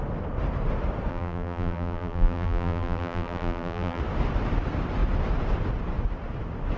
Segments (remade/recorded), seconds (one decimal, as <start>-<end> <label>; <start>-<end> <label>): 0.0-1.1 recorded; 1.1-4.0 remade; 4.0-6.8 recorded